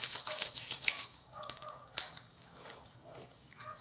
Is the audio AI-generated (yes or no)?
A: yes